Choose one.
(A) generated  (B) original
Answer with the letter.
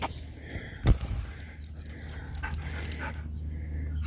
B